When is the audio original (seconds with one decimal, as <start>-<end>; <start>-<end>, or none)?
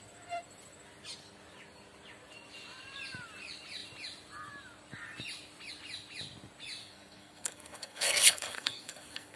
0.0-6.8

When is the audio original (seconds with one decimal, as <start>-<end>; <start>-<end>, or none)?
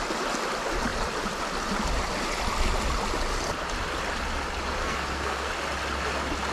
0.0-4.8; 5.5-6.5